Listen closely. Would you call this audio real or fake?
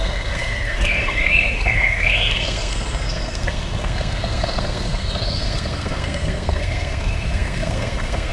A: fake